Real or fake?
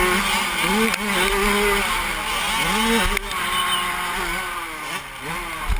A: real